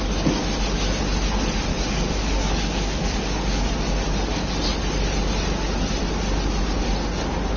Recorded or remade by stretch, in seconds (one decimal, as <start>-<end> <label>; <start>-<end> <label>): 0.0-1.7 recorded; 1.7-3.7 remade; 3.7-7.6 recorded